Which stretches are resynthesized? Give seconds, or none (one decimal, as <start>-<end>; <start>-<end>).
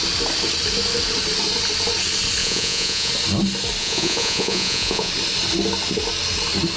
2.4-3.1; 3.8-5.1